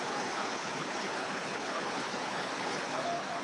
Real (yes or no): no